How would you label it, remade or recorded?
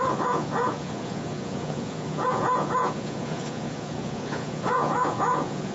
remade